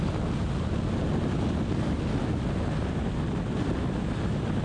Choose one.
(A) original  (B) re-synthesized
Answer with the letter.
A